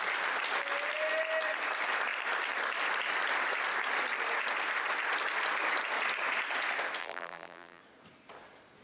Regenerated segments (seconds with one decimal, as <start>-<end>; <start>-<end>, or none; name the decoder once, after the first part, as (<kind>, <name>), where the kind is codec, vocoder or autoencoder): 7.0-7.8 (vocoder, BigVGAN v2)